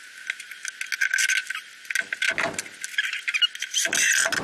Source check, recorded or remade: recorded